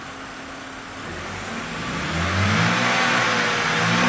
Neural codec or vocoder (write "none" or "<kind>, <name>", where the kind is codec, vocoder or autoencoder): none